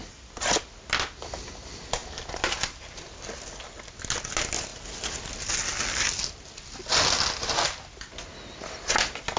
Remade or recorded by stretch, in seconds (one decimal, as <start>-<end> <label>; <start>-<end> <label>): 0.0-9.4 recorded